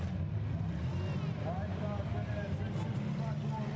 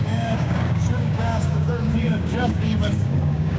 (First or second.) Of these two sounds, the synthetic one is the second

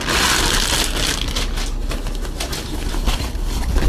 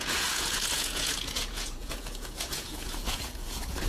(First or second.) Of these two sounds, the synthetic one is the second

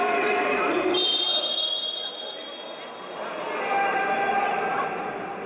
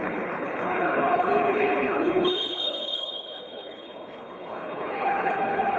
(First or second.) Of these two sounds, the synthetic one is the second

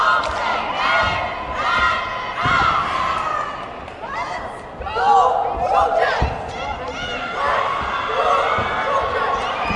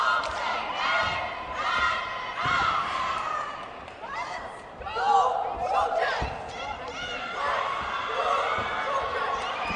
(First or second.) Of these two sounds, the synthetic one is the second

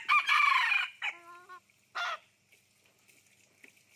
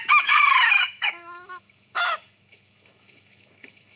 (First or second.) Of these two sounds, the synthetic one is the second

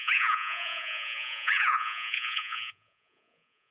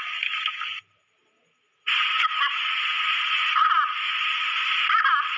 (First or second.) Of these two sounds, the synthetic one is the first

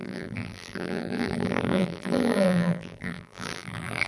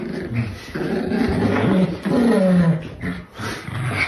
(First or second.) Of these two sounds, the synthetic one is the first